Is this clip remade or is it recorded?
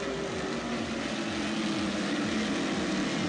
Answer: recorded